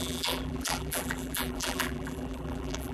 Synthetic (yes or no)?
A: yes